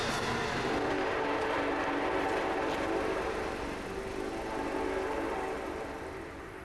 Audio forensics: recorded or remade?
recorded